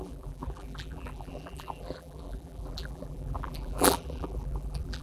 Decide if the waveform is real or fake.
fake